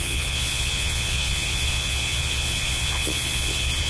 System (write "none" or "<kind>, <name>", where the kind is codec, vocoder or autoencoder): vocoder, Vocos